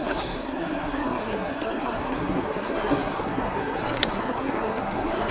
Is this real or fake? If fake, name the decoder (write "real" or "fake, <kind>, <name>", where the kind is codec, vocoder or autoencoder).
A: fake, codec, SNAC